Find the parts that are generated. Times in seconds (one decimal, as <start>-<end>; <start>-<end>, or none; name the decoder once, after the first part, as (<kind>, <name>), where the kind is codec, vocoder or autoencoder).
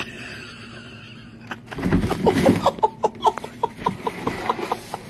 0.0-1.2 (vocoder, BigVGAN v2); 1.8-5.1